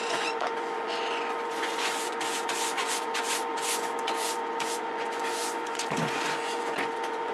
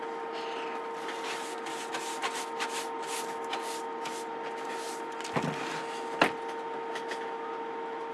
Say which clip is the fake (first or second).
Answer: first